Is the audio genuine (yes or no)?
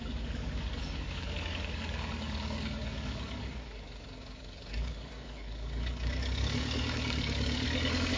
no